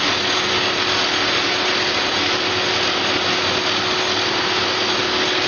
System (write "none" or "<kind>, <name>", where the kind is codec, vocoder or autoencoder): none